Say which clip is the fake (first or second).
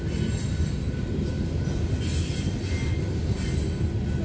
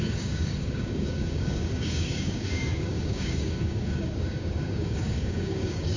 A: second